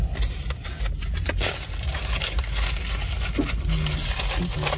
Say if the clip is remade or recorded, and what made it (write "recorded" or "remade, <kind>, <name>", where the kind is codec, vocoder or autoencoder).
recorded